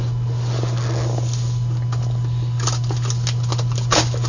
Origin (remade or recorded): recorded